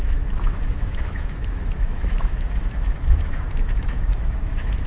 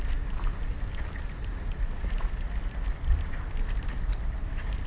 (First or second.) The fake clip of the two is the first